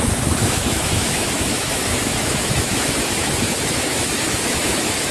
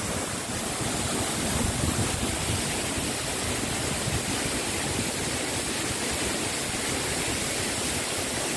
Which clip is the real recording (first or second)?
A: second